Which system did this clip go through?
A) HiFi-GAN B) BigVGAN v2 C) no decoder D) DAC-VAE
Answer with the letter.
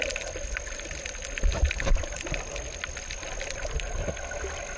C